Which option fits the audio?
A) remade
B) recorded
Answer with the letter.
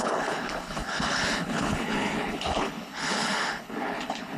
A